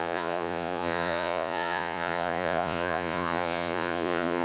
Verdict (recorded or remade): remade